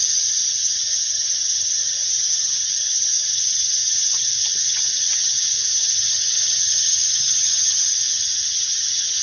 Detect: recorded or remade remade